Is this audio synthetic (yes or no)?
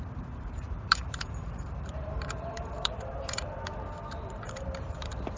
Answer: yes